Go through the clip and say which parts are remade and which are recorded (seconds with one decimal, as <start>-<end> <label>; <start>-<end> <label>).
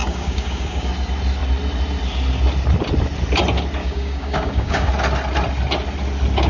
0.0-0.9 remade; 0.9-3.8 recorded; 3.8-4.9 remade; 4.9-6.5 recorded